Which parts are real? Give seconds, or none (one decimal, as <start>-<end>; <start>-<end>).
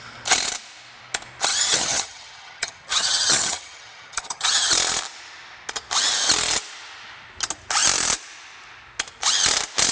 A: 0.0-1.5; 4.7-9.9